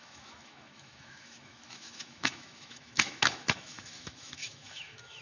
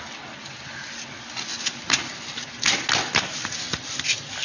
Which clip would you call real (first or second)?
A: second